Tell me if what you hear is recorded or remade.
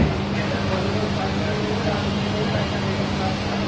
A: recorded